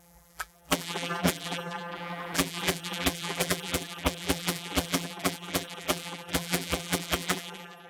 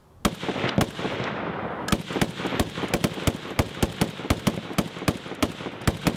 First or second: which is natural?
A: second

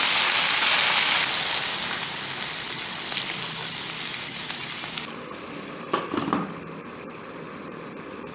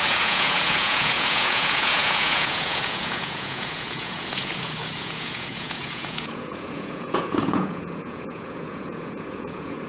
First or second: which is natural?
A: first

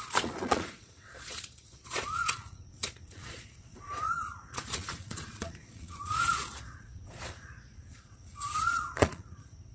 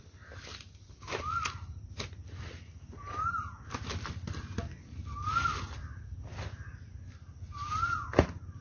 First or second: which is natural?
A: second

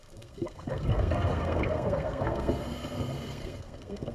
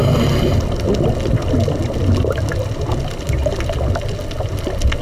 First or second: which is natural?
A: second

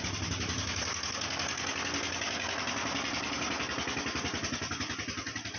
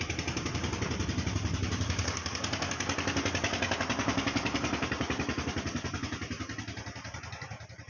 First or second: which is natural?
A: first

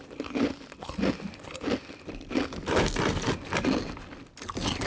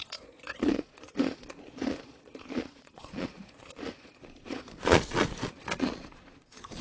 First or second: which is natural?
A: first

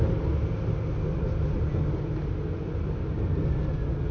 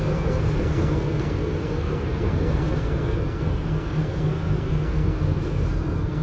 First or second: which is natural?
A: first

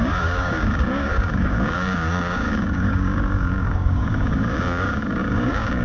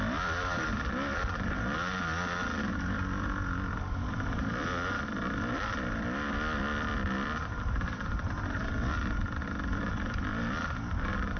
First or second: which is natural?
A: second